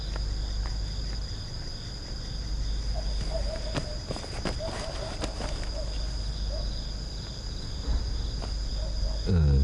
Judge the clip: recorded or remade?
recorded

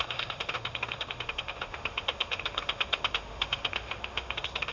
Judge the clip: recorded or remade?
remade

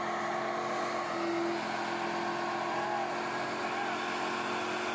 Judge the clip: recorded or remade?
recorded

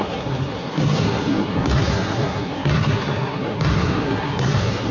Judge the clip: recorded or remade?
remade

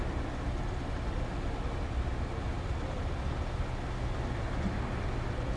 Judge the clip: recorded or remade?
recorded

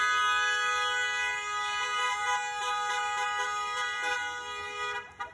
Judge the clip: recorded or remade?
recorded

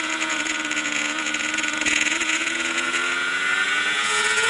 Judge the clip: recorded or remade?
remade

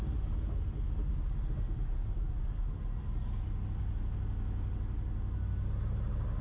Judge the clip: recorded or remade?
recorded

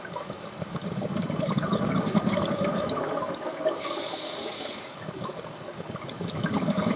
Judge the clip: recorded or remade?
remade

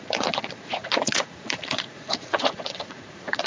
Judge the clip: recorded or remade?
remade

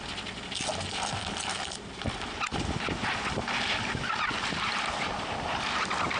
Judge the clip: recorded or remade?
remade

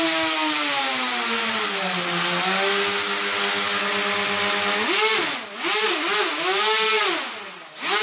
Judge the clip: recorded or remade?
recorded